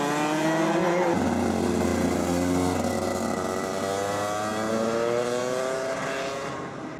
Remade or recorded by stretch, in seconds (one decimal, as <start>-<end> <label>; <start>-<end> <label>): 0.0-7.0 recorded